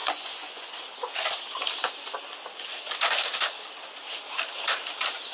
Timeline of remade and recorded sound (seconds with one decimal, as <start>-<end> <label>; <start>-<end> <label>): 0.0-0.7 remade; 0.7-5.3 recorded